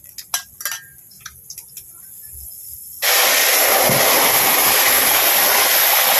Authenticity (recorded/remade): recorded